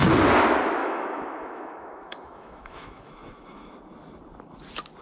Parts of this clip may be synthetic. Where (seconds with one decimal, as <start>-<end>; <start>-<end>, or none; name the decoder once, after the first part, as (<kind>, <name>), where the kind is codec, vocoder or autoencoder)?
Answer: 0.8-3.7 (autoencoder, DAC-VAE)